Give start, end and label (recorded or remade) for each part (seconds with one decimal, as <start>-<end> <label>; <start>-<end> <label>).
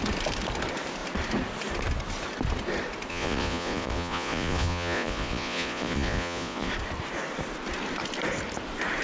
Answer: 0.0-3.1 recorded; 3.1-6.7 remade; 6.7-9.0 recorded